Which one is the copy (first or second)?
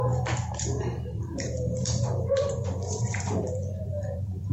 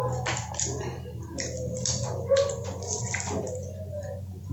first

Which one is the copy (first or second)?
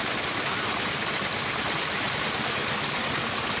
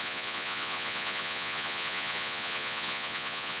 second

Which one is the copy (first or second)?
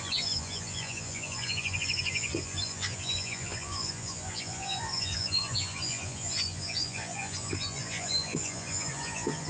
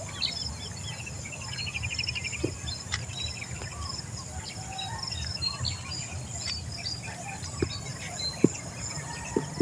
first